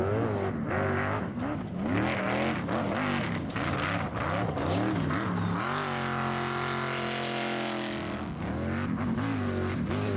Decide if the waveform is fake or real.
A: real